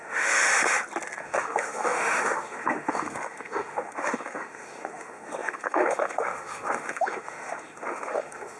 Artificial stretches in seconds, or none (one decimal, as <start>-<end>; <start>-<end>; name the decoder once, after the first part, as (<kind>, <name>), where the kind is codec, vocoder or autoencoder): 0.0-0.5 (autoencoder, DAC-VAE); 1.2-8.6